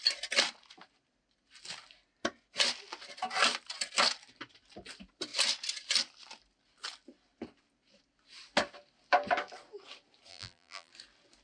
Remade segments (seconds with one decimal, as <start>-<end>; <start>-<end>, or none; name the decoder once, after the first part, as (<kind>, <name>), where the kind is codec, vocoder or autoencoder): 10.3-10.9 (vocoder, BigVGAN v2)